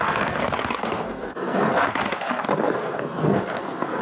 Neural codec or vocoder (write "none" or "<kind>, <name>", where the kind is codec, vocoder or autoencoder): codec, SNAC